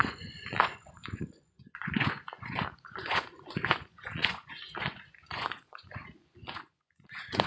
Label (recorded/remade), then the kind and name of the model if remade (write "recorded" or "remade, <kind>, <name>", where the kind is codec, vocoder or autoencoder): remade, vocoder, Vocos